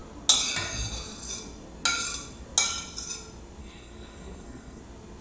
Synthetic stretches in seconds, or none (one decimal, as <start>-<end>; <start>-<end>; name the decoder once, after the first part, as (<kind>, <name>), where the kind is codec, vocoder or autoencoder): 3.6-4.8 (codec, SNAC)